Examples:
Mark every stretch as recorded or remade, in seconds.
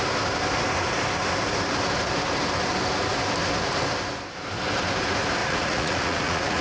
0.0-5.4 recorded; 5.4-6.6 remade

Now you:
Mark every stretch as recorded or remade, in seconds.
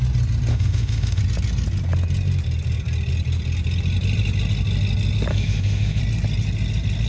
0.0-0.5 recorded; 0.5-1.2 remade; 1.2-5.3 recorded; 5.3-6.0 remade; 6.0-7.1 recorded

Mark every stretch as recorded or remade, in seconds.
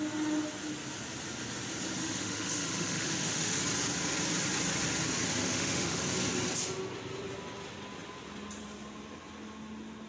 0.0-2.0 recorded; 2.0-3.6 remade; 3.6-5.4 recorded; 5.4-6.0 remade; 6.0-10.1 recorded